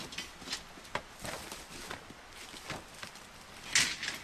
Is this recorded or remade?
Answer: recorded